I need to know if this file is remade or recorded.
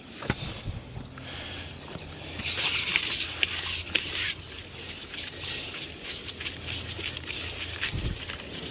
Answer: recorded